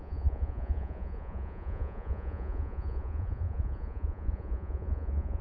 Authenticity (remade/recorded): remade